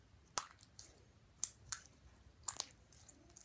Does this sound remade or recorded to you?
recorded